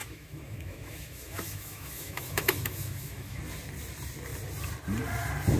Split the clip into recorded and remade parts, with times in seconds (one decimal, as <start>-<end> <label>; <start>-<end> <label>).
0.0-3.4 remade; 3.4-5.6 recorded